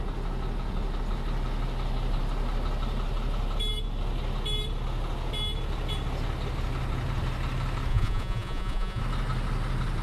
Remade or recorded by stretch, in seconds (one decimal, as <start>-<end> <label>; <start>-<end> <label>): 0.0-7.9 recorded; 7.9-9.0 remade; 9.0-10.0 recorded